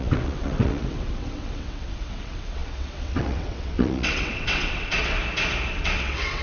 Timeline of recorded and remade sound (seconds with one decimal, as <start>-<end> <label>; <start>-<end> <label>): 0.0-5.2 remade; 5.2-5.7 recorded; 5.7-6.4 remade